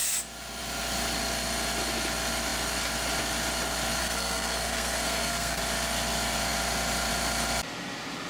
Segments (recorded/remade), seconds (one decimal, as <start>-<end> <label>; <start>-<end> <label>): 0.0-4.0 recorded; 4.0-5.6 remade; 5.6-8.3 recorded